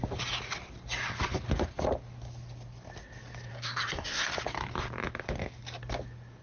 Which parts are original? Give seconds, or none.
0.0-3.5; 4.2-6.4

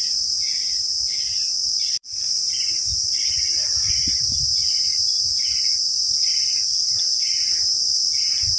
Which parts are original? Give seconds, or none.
0.0-1.6; 2.1-4.9; 6.0-8.6